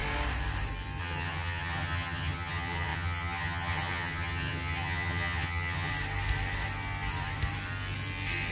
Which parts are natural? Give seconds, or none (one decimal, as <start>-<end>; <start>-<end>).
0.0-1.0; 5.9-8.5